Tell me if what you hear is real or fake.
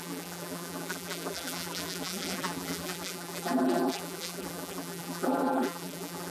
fake